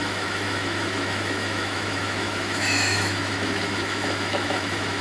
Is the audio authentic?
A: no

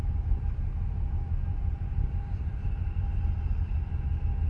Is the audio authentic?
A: yes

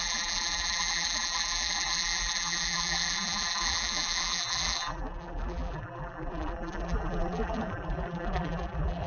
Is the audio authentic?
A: no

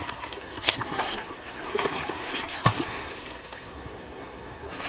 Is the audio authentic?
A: no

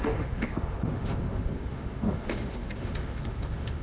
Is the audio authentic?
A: no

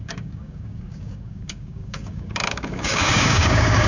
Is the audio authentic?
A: no